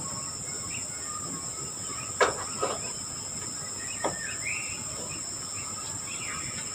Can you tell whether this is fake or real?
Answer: real